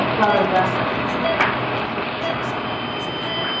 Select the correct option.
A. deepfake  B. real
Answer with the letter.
B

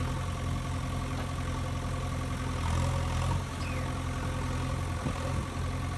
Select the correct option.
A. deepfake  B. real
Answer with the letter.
B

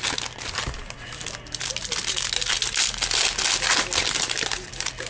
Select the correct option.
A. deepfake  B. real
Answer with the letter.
B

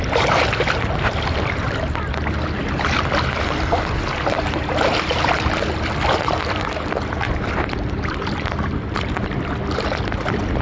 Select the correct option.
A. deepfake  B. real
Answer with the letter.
B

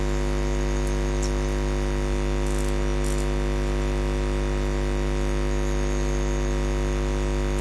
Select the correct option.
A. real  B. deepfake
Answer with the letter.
A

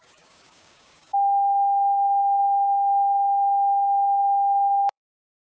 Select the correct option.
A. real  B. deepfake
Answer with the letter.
B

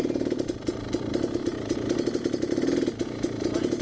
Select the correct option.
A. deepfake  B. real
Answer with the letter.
B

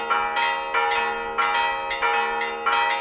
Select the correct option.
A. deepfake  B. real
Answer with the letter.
B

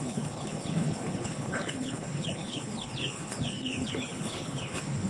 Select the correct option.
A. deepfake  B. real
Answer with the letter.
A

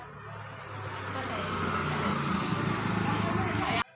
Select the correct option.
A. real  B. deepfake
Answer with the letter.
A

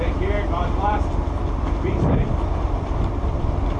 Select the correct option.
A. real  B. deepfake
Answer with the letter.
B